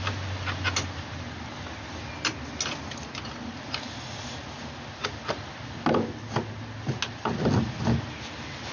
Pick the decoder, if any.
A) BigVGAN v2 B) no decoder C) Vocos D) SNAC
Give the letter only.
B